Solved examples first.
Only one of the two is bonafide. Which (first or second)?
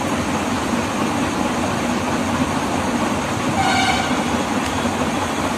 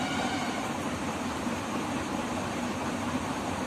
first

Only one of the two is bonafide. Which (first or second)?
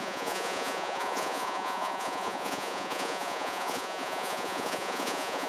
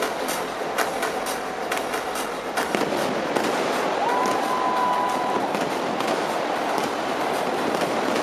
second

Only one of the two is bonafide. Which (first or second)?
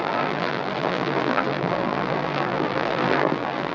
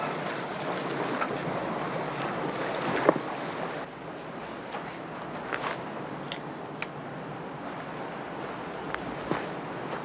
second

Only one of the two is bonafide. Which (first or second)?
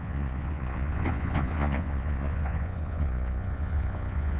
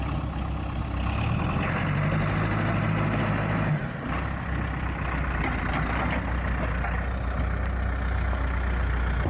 second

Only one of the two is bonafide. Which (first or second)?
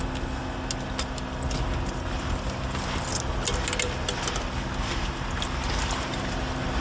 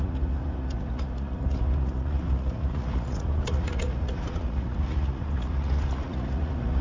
first